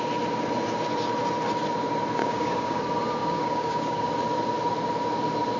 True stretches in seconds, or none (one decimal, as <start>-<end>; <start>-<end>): 0.0-2.2; 2.8-3.2; 4.1-5.6